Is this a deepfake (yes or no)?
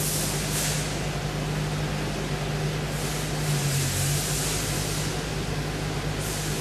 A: no